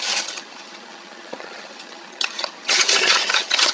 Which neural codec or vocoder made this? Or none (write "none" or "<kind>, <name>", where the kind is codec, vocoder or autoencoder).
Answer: vocoder, HiFi-GAN